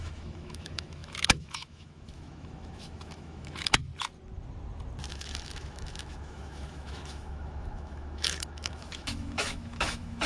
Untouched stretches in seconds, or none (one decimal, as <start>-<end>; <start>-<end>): 3.9-5.1